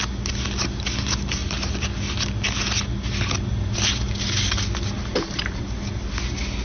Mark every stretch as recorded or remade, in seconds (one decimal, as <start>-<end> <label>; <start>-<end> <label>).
0.0-6.6 recorded